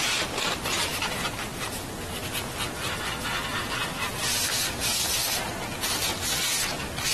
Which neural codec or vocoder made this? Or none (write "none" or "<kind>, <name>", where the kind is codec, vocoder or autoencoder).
none